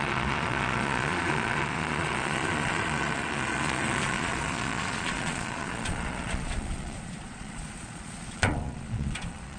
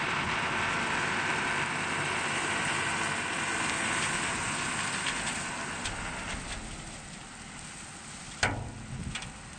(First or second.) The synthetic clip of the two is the first